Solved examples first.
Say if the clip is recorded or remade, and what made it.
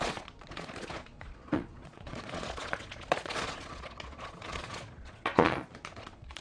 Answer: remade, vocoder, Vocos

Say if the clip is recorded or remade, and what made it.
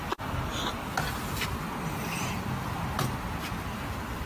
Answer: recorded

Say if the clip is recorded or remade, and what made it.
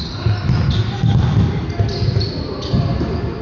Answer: recorded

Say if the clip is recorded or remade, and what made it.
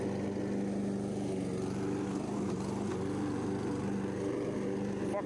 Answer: recorded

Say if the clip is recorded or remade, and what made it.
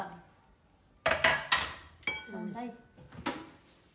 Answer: recorded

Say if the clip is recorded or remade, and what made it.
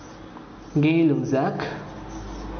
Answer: recorded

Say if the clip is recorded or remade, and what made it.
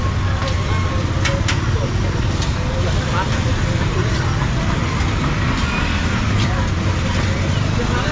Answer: recorded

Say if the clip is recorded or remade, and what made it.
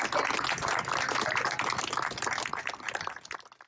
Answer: recorded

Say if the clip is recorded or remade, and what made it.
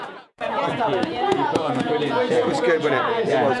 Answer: remade, vocoder, Vocos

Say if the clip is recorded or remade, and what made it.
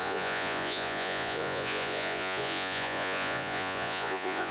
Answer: remade, vocoder, Vocos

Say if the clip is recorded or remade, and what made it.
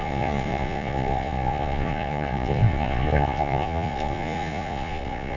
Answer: remade, vocoder, Vocos